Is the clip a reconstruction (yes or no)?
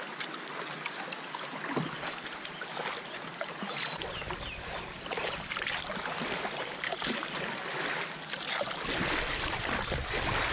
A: no